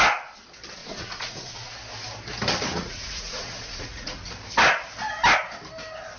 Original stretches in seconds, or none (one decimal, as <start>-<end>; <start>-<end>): 0.0-0.8; 1.7-2.7; 4.3-6.2